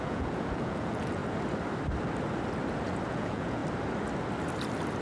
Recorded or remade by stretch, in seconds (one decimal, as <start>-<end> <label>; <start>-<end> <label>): 0.0-1.2 remade; 1.2-3.1 recorded; 3.1-3.6 remade; 3.6-5.0 recorded